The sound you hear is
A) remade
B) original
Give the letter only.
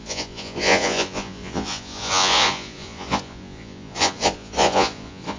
A